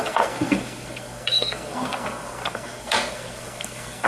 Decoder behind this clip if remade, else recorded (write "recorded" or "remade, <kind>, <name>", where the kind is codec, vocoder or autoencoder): remade, codec, SNAC